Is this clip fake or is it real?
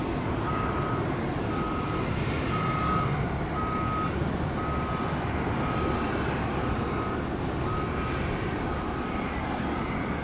real